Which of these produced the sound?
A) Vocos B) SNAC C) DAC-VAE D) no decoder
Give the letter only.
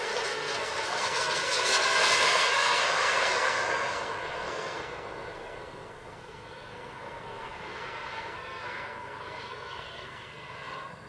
B